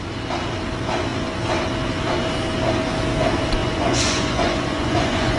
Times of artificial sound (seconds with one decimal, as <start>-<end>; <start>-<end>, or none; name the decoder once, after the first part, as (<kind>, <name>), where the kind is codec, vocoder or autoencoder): 3.6-5.4 (vocoder, Vocos)